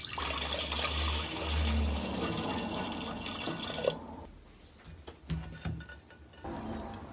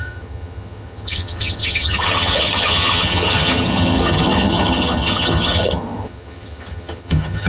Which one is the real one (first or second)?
first